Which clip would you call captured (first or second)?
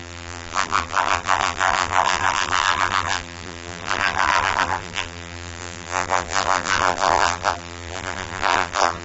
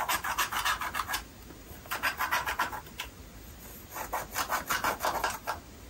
second